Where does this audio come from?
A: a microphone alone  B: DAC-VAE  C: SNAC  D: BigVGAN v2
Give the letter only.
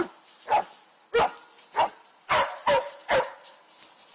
A